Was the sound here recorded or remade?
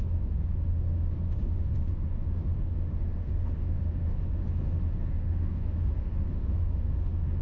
remade